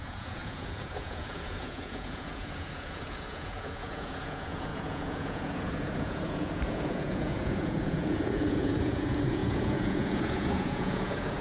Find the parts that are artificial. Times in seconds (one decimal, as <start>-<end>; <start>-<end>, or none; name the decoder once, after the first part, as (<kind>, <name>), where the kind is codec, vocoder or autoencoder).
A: 0.0-11.4 (vocoder, Vocos)